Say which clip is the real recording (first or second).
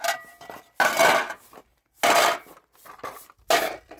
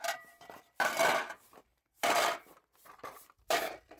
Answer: first